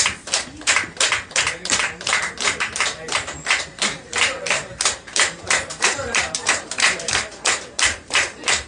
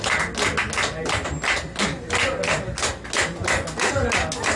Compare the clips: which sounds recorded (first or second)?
second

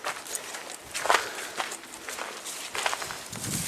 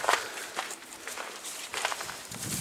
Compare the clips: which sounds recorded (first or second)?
first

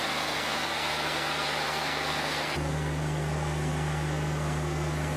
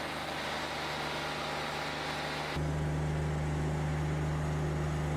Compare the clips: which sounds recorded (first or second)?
second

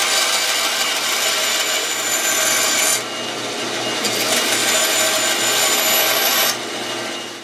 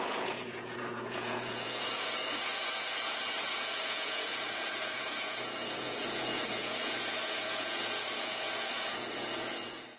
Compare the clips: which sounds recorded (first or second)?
first